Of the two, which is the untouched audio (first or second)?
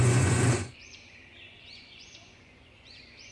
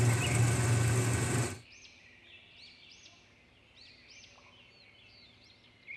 second